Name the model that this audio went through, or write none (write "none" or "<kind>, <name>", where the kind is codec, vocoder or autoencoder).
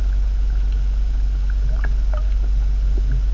none